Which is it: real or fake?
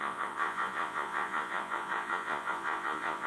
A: fake